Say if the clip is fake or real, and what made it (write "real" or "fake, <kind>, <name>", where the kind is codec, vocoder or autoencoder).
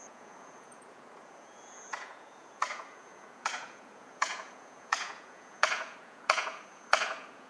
fake, vocoder, Vocos